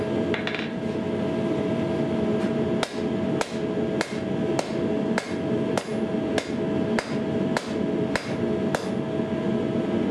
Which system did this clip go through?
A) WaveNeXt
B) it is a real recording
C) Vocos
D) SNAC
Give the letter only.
B